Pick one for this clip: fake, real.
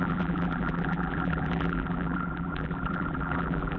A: fake